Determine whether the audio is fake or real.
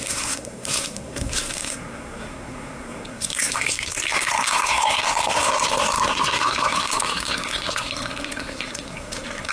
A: fake